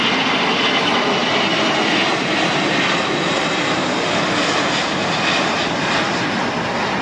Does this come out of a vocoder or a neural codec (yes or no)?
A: no